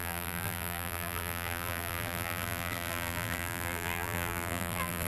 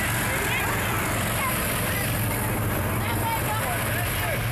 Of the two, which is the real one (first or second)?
second